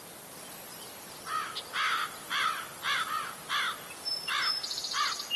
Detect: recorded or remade remade